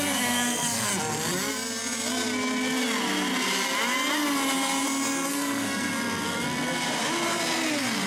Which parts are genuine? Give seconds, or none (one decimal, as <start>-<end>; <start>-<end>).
0.9-5.3; 5.9-8.1